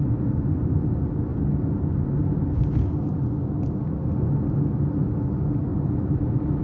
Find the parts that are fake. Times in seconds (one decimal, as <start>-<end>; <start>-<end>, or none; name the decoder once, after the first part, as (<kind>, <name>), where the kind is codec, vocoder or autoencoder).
none